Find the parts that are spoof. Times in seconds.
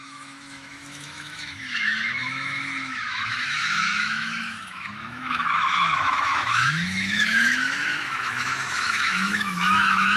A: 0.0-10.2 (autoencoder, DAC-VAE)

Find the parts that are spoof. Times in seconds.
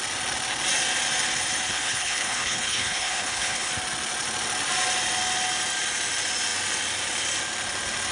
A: 1.7-3.7 (codec, HILCodec)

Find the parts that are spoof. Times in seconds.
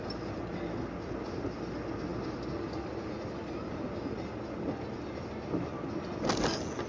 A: none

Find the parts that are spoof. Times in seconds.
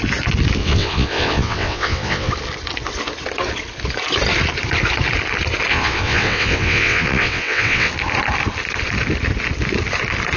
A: 0.6-2.3 (vocoder, WaveNeXt); 5.7-7.9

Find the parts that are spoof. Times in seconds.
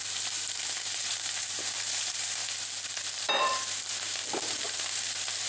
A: 0.0-2.4 (vocoder, BigVGAN v2); 3.2-5.5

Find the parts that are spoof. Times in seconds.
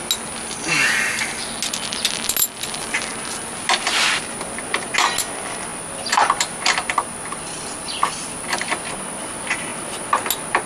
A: 5.7-9.0 (vocoder, BigVGAN v2)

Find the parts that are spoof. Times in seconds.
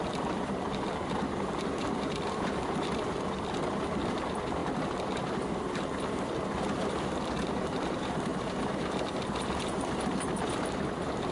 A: 0.0-4.6 (vocoder, BigVGAN v2); 5.5-11.3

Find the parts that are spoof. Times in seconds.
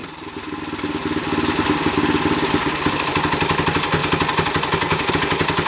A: 0.0-0.6 (vocoder, BigVGAN v2)